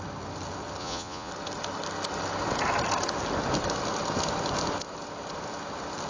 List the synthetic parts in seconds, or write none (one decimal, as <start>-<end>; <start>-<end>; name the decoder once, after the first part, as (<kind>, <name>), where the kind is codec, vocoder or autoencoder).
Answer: 0.8-1.3 (vocoder, Vocos)